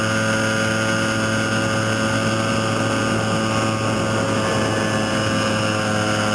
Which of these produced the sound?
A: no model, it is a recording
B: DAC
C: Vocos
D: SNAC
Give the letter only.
A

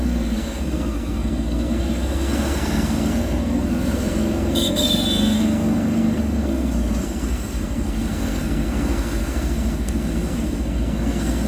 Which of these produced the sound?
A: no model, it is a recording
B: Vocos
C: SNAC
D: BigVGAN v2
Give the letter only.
C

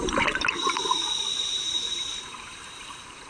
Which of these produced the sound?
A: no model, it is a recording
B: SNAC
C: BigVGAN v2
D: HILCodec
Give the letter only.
C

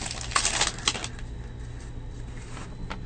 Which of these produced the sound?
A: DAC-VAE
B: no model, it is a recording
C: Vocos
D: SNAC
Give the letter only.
B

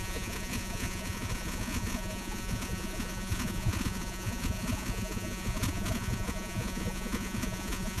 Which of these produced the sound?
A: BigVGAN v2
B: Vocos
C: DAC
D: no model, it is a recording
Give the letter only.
B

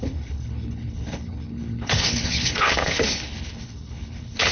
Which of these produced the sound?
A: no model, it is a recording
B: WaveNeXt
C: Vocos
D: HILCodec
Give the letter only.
D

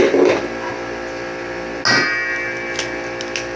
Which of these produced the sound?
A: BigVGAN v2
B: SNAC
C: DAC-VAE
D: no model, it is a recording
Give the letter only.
D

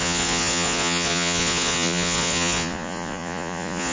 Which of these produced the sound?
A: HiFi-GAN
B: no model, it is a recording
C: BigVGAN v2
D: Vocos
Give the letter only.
D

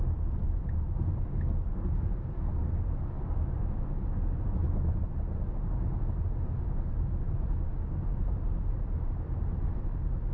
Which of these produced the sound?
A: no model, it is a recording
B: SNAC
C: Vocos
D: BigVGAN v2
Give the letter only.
A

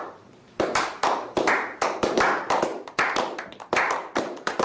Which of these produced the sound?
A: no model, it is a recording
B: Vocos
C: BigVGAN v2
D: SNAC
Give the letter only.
C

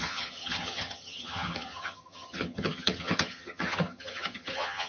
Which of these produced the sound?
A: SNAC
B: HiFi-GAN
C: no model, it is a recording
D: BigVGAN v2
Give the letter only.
B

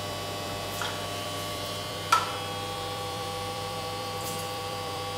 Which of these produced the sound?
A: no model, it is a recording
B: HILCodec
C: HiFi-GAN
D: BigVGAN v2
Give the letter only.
D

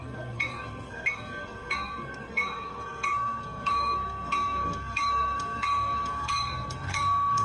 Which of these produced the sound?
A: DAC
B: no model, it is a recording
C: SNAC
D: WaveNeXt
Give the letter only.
C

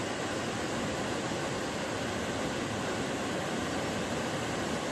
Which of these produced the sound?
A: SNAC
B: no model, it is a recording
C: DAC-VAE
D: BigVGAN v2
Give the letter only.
B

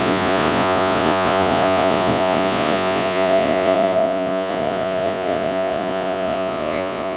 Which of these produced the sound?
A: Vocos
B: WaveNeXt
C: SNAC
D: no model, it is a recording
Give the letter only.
A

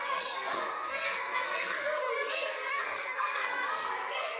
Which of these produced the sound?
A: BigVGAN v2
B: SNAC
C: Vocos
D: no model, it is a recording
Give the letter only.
B